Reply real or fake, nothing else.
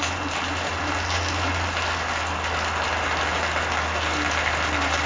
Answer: real